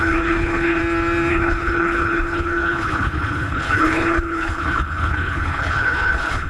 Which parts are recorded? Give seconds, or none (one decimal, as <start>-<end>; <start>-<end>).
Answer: 0.8-1.3